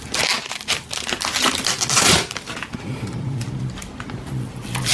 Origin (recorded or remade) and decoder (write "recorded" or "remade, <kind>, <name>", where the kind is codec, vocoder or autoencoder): recorded